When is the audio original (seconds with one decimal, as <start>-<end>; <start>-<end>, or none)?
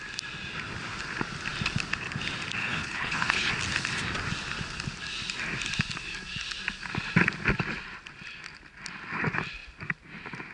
0.0-2.6; 3.5-10.5